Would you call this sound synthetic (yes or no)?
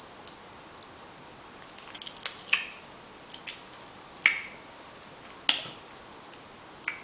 no